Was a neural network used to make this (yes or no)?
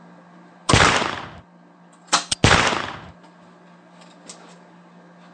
no